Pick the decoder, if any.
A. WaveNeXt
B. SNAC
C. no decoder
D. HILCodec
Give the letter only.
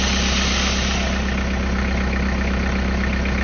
C